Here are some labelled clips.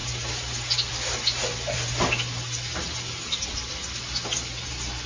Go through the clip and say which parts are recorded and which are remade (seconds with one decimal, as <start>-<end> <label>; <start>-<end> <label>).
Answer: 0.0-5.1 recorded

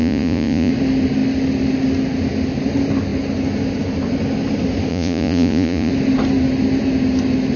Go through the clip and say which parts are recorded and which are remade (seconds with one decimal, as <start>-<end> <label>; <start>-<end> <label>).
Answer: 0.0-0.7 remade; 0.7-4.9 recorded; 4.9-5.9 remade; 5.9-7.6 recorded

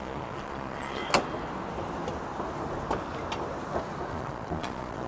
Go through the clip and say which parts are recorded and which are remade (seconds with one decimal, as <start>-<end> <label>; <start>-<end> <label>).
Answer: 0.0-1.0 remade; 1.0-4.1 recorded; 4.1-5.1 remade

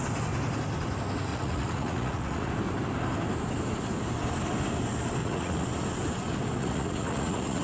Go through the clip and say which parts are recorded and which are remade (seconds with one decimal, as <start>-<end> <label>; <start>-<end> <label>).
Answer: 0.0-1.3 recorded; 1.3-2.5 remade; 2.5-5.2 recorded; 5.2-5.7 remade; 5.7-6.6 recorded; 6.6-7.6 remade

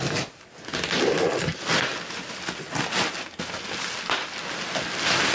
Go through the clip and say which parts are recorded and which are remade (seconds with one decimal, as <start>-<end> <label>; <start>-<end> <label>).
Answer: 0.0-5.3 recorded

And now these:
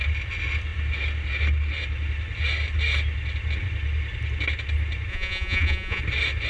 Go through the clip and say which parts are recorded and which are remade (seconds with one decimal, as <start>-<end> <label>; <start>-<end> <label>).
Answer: 0.0-5.1 recorded; 5.1-6.0 remade; 6.0-6.5 recorded

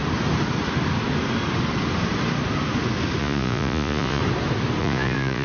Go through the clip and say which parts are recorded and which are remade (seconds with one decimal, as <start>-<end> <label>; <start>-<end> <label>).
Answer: 0.0-3.2 recorded; 3.2-4.2 remade; 4.2-4.8 recorded; 4.8-5.4 remade

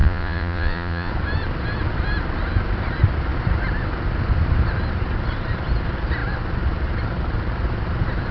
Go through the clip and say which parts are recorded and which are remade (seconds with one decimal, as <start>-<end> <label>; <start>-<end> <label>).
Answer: 0.0-1.1 remade; 1.1-8.3 recorded